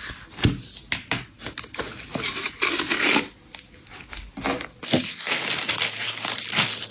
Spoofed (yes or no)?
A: no